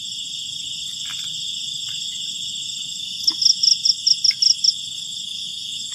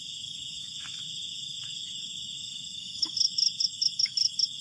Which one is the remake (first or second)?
second